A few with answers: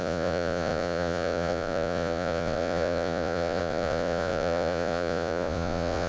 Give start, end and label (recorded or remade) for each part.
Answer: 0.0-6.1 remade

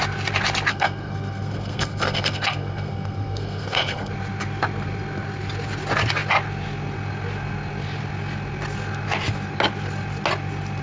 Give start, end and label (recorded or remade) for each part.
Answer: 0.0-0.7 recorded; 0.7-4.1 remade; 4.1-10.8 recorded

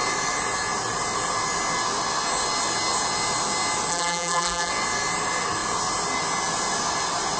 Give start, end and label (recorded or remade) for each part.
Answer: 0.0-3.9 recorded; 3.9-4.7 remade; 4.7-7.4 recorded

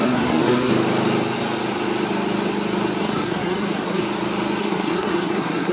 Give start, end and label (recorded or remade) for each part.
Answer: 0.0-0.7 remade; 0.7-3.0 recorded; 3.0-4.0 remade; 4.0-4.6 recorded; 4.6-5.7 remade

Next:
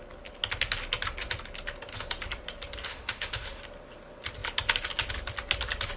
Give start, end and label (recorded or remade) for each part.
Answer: 0.0-2.9 recorded; 2.9-3.6 remade; 3.6-6.0 recorded

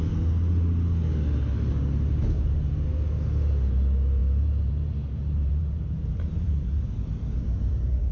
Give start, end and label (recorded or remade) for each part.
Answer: 0.0-4.2 recorded; 4.2-8.1 remade